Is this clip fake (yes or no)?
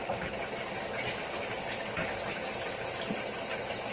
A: no